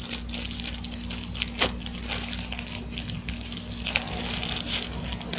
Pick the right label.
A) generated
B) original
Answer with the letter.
B